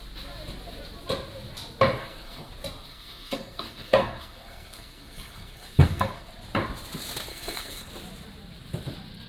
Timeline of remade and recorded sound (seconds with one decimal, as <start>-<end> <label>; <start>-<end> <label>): 0.0-2.0 recorded; 2.0-2.5 remade; 2.5-2.9 recorded; 2.9-6.3 remade; 6.3-7.3 recorded; 7.3-7.9 remade; 7.9-9.3 recorded